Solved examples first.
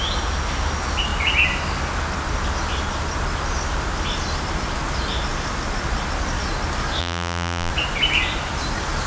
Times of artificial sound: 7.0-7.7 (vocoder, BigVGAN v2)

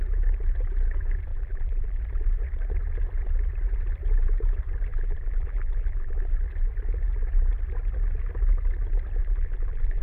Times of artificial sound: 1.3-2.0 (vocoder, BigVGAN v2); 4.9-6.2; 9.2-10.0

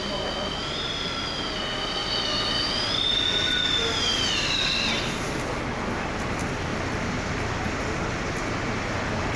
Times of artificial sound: 6.7-7.3 (vocoder, BigVGAN v2)

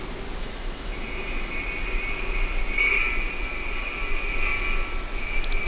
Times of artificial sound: 0.4-1.6 (autoencoder, DAC-VAE)